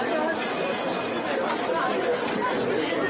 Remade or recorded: recorded